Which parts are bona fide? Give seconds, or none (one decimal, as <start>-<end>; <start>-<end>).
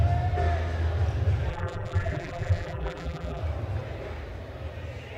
0.0-1.5; 3.4-5.2